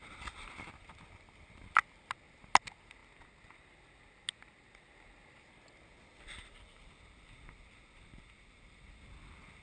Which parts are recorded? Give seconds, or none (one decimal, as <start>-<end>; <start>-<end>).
0.0-9.6